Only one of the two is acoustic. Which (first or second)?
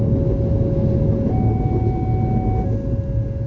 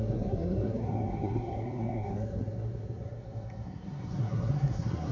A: first